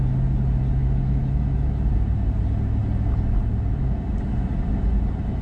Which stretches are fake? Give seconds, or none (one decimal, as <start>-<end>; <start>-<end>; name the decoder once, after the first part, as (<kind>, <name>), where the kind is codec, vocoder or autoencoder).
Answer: 0.8-1.9 (autoencoder, DAC-VAE)